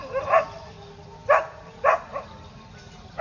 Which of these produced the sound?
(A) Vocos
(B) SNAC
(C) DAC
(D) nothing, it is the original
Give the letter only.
D